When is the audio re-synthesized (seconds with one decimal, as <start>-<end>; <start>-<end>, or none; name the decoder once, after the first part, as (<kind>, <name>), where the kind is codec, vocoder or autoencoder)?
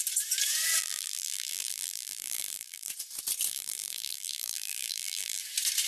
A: 0.8-2.9 (vocoder, BigVGAN v2); 3.5-5.4